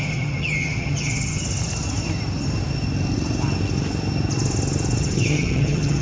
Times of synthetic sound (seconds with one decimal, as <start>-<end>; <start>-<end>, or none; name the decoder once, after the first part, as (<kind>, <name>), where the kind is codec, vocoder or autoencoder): 0.0-1.4 (vocoder, HiFi-GAN); 5.0-6.0

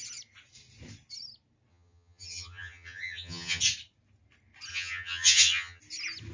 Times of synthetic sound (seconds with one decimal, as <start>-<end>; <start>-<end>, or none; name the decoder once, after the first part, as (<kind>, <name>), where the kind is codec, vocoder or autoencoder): 1.7-3.6 (vocoder, HiFi-GAN); 4.7-5.8